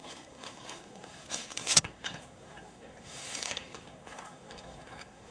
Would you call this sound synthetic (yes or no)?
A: yes